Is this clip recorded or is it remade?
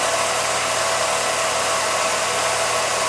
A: recorded